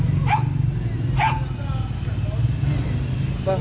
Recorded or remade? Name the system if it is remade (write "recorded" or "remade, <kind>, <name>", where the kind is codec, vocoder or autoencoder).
recorded